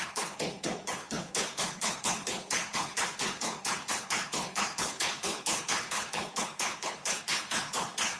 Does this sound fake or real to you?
fake